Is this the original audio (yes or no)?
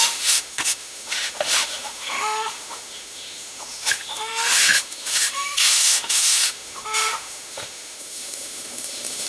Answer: no